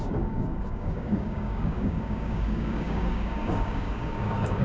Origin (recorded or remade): remade